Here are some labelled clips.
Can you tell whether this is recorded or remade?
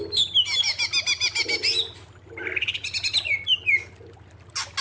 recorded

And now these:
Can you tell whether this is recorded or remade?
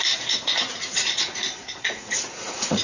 remade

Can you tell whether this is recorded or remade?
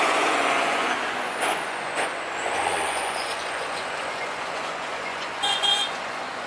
remade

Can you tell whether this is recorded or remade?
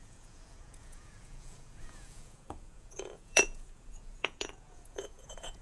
remade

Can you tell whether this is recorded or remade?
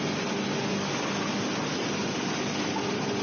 recorded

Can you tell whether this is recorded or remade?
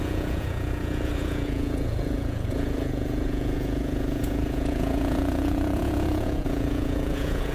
remade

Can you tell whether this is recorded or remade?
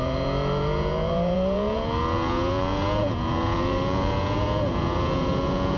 remade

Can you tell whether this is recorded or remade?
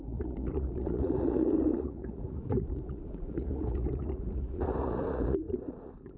remade